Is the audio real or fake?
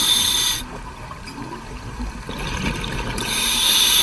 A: real